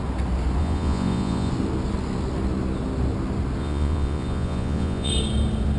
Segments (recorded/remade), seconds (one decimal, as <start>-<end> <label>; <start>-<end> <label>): 0.0-0.6 recorded; 0.6-1.5 remade; 1.5-3.6 recorded; 3.6-5.1 remade; 5.1-5.8 recorded

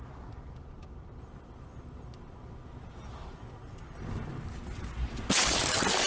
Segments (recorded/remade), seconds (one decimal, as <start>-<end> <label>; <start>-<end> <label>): 0.0-6.1 recorded

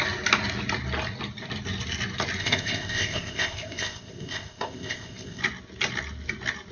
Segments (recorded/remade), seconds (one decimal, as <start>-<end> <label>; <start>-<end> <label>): 0.0-2.4 recorded; 2.4-5.4 remade; 5.4-6.7 recorded

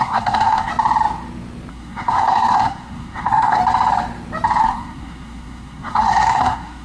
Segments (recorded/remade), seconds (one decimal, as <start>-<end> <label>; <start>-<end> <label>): 0.0-0.7 remade; 0.7-1.7 recorded; 1.7-3.6 remade; 3.6-4.6 recorded; 4.6-6.8 remade

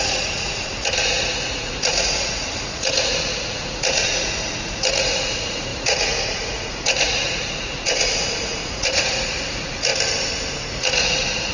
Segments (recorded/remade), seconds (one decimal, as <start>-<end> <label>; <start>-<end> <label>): 0.0-9.9 remade; 9.9-10.7 recorded; 10.7-11.5 remade